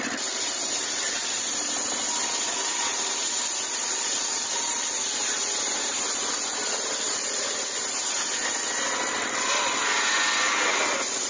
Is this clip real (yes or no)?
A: yes